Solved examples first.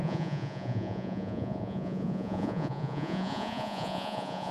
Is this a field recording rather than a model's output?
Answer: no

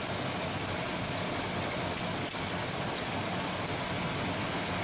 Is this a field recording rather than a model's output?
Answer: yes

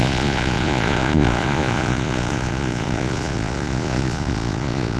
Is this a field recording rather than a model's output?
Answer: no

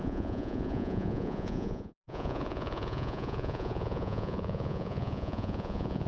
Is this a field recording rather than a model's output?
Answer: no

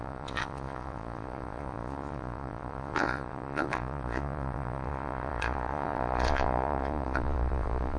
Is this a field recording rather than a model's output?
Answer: no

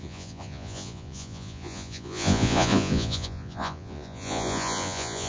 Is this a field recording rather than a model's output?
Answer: no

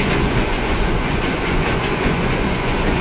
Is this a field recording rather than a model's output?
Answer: no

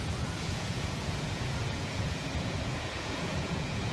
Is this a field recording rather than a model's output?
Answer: no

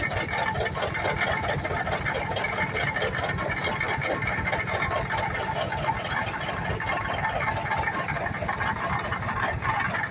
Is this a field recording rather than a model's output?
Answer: yes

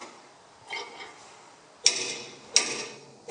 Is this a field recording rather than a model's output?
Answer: yes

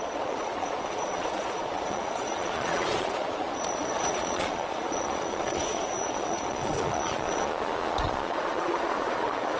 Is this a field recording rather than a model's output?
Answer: no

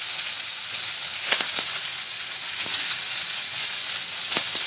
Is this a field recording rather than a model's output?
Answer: no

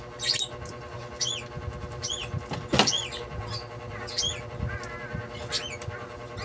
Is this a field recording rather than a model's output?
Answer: yes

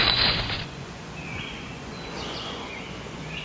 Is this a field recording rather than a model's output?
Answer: no